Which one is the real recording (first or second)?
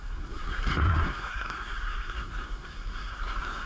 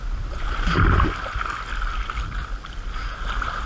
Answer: second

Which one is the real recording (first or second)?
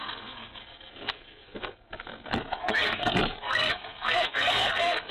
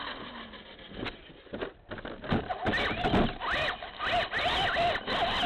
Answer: second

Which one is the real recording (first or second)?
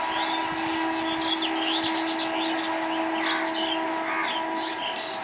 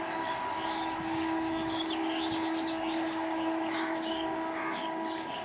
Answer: first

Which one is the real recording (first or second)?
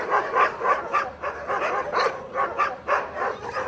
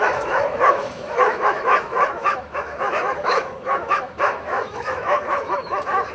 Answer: first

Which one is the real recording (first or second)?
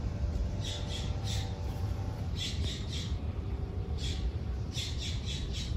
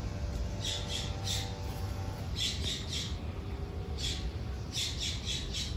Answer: second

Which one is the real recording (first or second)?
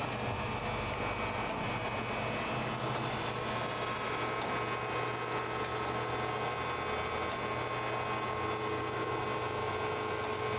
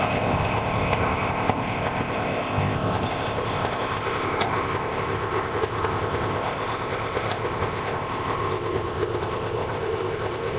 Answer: first